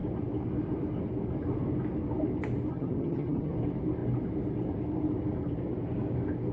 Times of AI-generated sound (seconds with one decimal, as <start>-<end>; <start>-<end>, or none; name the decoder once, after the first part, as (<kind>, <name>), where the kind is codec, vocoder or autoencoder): 2.7-3.5 (vocoder, HiFi-GAN)